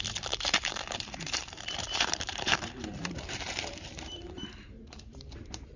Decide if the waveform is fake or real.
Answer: fake